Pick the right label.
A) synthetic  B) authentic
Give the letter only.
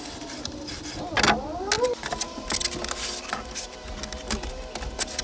B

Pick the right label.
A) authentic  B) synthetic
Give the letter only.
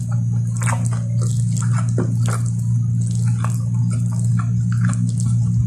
A